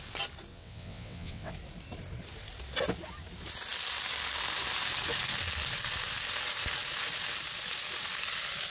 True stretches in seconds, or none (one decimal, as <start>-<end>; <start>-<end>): 0.0-0.5; 1.5-8.7